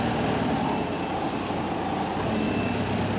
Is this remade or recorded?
recorded